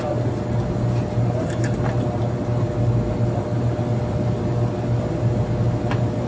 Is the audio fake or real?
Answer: real